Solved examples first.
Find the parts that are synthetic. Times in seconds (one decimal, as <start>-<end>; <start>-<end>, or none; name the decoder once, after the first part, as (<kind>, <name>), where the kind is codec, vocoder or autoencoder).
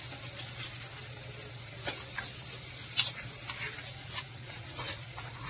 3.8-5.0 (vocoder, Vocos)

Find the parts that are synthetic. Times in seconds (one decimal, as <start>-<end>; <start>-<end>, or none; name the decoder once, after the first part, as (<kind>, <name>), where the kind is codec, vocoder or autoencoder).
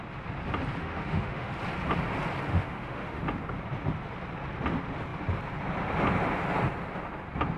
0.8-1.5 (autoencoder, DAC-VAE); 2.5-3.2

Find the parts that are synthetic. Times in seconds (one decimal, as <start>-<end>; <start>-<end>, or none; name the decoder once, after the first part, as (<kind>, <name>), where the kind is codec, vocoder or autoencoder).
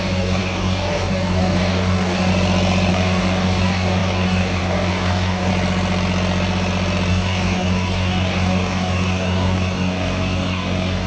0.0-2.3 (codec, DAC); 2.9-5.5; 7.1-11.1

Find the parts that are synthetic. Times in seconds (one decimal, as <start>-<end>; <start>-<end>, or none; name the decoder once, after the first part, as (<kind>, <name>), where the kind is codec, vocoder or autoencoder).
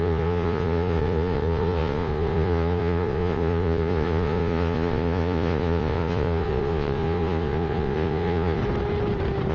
0.0-8.6 (vocoder, Vocos)